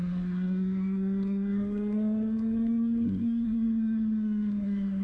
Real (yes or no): no